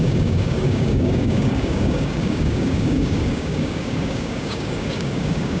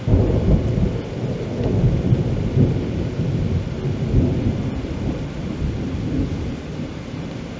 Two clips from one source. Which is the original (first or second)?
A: second